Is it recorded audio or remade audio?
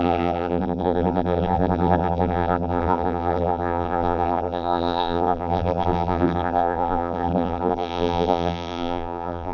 remade